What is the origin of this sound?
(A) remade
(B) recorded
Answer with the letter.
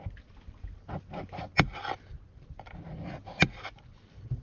B